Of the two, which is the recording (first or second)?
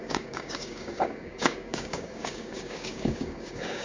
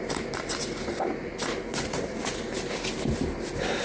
second